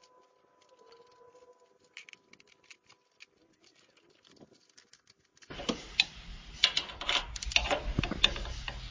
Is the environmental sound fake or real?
real